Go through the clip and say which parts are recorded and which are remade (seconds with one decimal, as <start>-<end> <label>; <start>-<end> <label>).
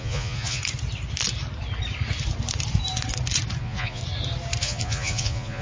0.0-0.6 remade; 0.6-3.6 recorded; 3.6-4.0 remade; 4.0-4.6 recorded; 4.6-5.6 remade